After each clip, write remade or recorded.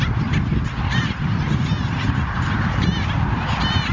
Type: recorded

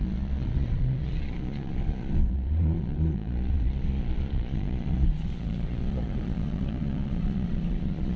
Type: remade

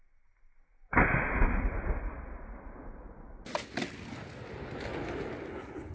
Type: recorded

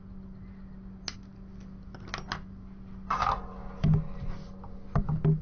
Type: recorded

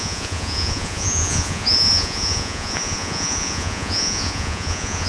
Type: remade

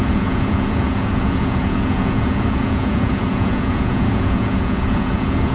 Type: remade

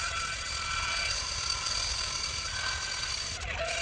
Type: recorded